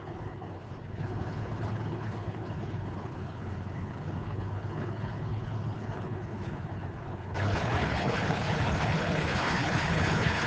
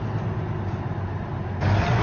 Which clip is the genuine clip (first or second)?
second